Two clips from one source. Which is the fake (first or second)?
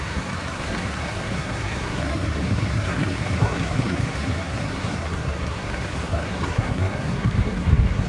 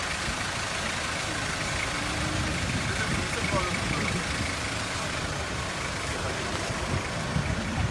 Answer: first